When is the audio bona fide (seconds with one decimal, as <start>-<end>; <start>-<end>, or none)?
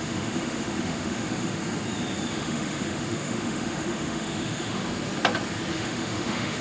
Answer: 1.6-2.3; 4.8-5.7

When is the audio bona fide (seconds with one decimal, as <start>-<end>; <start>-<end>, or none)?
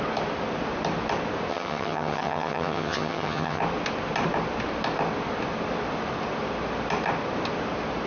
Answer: 0.0-1.5; 3.6-8.1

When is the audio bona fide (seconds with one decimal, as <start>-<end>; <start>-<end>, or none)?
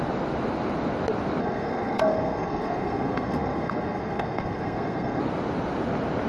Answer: 0.0-1.4; 5.2-6.3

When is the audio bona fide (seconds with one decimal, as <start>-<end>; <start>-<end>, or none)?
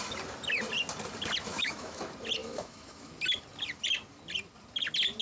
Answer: 0.0-1.5; 2.0-2.4; 3.1-5.2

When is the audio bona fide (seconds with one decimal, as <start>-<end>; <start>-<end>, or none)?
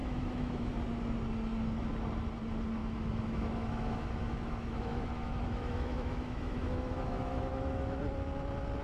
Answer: 0.7-2.8; 8.0-8.8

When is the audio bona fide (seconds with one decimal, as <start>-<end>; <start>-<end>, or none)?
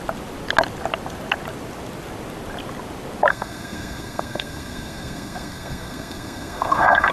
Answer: 0.0-3.3